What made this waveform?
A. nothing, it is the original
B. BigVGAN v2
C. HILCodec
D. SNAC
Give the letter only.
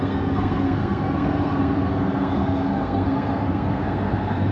D